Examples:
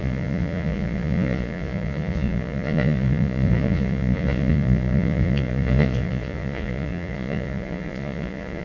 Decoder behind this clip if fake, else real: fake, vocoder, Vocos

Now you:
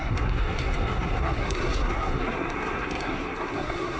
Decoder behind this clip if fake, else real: fake, codec, SNAC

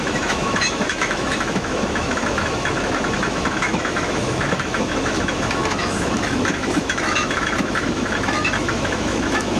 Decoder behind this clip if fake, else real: fake, autoencoder, DAC-VAE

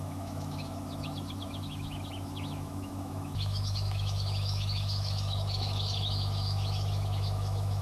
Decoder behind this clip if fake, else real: fake, autoencoder, DAC-VAE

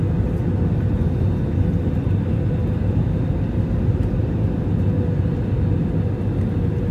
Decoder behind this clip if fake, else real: real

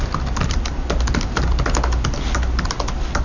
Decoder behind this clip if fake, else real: real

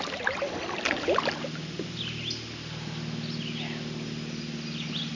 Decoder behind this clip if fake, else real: real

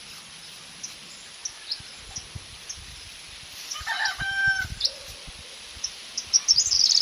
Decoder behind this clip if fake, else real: real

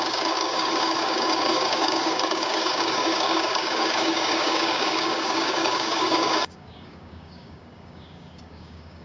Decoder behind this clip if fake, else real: fake, codec, DAC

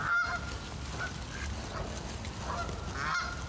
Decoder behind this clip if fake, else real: real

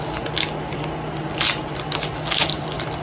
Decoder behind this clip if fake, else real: real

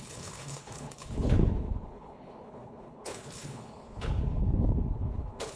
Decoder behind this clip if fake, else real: fake, codec, HILCodec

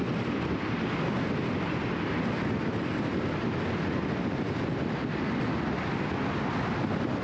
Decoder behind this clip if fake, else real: real